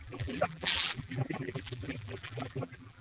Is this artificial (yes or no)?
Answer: yes